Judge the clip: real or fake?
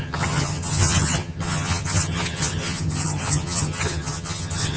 fake